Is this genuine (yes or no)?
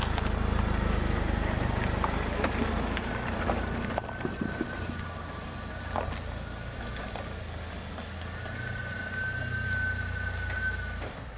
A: yes